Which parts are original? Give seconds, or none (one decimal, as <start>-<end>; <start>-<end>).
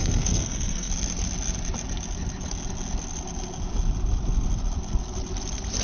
0.9-5.8